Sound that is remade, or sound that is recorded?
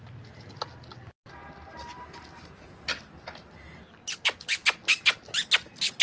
recorded